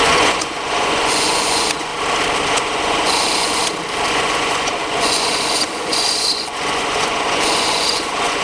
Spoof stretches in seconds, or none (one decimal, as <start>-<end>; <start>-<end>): 0.0-1.9; 2.5-3.6; 4.1-8.4